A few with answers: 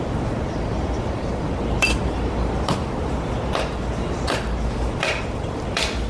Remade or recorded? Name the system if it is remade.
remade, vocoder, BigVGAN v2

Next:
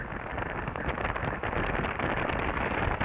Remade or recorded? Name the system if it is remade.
recorded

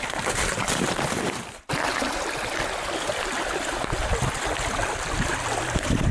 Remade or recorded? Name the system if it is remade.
remade, vocoder, BigVGAN v2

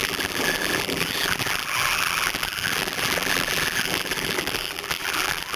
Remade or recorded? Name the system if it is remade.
remade, vocoder, BigVGAN v2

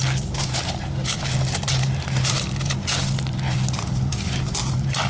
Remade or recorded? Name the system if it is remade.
remade, vocoder, BigVGAN v2